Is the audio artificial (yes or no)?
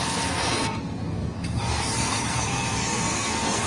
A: yes